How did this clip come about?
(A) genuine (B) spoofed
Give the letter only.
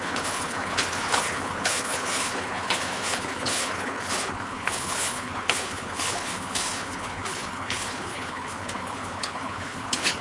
B